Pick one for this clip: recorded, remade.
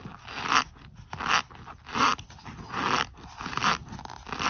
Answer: recorded